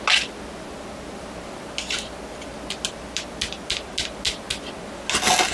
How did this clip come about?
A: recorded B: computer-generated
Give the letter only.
A